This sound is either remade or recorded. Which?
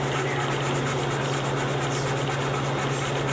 recorded